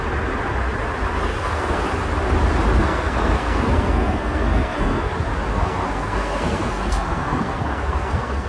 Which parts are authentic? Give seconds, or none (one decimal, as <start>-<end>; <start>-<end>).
0.0-1.3; 1.8-2.8; 5.1-5.5

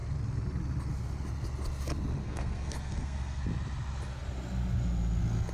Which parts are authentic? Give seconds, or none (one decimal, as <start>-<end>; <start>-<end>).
0.0-2.2; 3.4-5.5